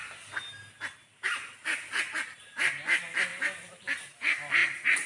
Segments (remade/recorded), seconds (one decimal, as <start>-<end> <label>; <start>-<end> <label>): 0.0-3.3 recorded; 3.3-4.0 remade; 4.0-4.6 recorded; 4.6-5.1 remade